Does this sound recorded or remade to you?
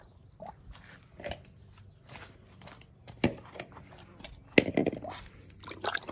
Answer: recorded